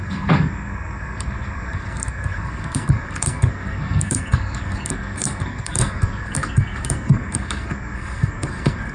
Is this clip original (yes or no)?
no